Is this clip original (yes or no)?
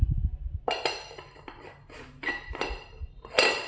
yes